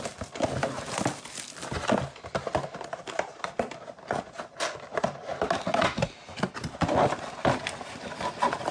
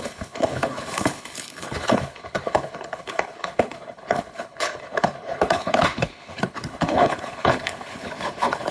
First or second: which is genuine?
first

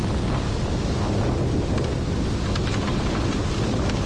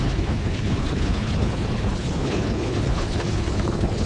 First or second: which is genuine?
first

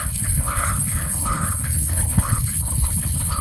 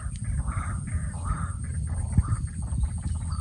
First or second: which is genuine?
second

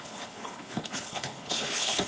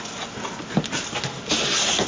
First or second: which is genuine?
second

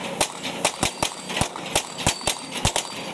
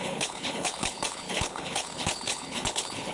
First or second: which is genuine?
first